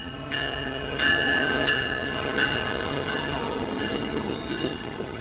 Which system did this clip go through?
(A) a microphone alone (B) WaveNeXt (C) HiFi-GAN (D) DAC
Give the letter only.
C